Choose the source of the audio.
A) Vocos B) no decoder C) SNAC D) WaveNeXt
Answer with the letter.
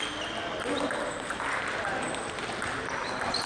B